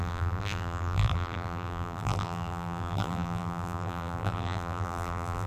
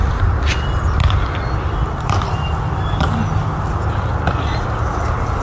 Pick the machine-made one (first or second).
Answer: first